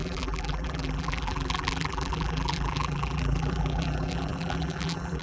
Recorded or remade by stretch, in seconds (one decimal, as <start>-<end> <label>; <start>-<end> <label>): 0.0-5.2 remade